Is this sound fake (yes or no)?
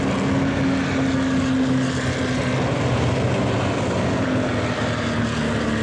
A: no